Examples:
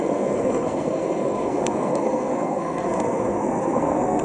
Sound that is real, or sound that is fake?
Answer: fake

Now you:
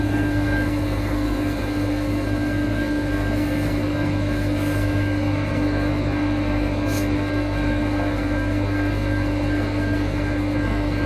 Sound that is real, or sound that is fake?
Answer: fake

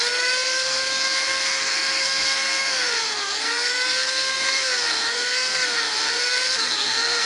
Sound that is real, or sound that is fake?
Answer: fake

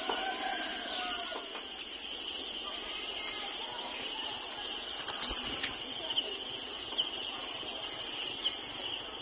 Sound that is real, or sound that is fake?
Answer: real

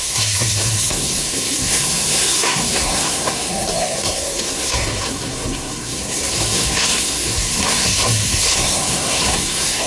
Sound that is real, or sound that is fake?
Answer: fake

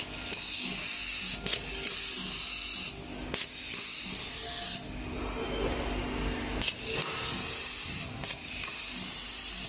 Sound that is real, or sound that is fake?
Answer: real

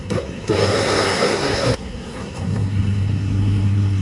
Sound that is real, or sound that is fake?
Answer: fake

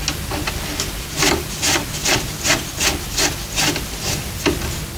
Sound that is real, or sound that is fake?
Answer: real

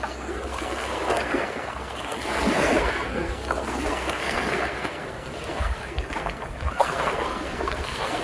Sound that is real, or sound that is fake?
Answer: fake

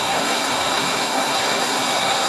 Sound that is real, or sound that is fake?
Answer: fake